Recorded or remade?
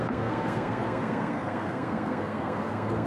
remade